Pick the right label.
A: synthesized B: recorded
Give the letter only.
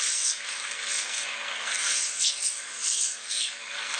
A